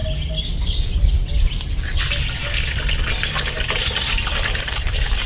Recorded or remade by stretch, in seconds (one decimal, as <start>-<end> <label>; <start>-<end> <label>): 0.0-1.4 recorded; 1.4-2.4 remade; 2.4-3.5 recorded; 3.5-5.3 remade